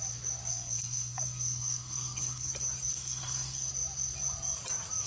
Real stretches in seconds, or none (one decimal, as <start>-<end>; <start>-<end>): 0.0-0.5; 2.5-2.9; 3.7-5.1